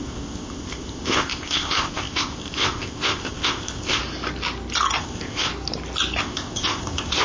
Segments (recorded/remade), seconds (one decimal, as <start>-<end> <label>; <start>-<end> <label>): 0.0-4.0 remade; 4.0-5.0 recorded; 5.0-5.5 remade; 5.5-6.2 recorded; 6.2-7.2 remade